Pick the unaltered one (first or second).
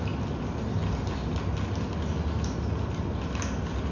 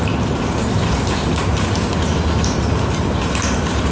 first